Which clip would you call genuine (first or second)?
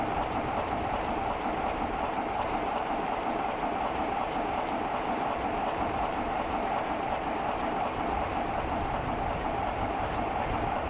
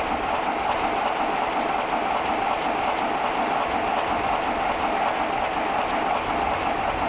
second